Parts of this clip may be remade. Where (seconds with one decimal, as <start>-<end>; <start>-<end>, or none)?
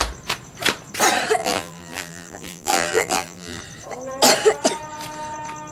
1.4-3.6